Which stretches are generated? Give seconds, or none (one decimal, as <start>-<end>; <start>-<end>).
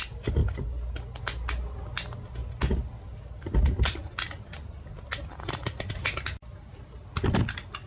none